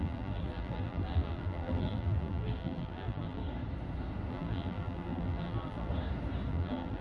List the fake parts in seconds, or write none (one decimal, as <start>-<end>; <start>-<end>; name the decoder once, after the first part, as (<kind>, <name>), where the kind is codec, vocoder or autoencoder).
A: 0.0-3.4 (vocoder, BigVGAN v2); 4.3-5.9; 6.5-7.0